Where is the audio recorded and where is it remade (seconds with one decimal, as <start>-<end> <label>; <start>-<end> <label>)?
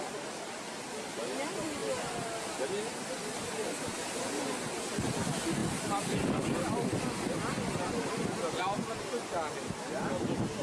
0.0-10.6 recorded